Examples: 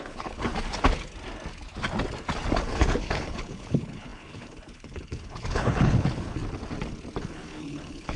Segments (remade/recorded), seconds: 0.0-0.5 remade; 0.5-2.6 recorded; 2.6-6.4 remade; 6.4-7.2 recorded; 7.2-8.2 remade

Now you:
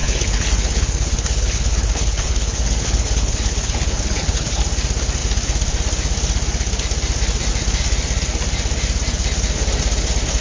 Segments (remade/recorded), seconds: 0.0-4.6 remade; 4.6-10.4 recorded

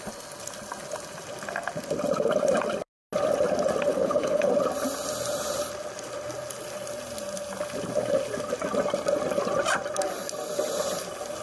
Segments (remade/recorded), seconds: 0.0-3.9 recorded; 3.9-4.5 remade; 4.5-11.4 recorded

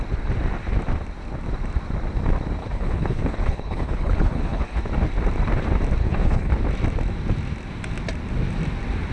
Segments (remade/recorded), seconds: 0.0-2.6 recorded; 2.6-4.8 remade; 4.8-6.0 recorded; 6.0-6.5 remade; 6.5-9.1 recorded

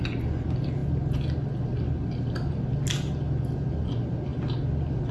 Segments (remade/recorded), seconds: 0.0-5.1 recorded

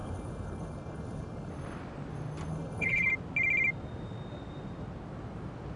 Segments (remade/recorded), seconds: 0.0-1.5 remade; 1.5-2.5 recorded; 2.5-3.1 remade; 3.1-5.8 recorded

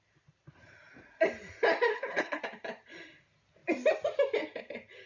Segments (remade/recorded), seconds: 0.0-1.9 recorded; 1.9-2.4 remade; 2.4-5.1 recorded